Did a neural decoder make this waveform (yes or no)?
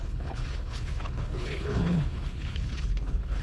yes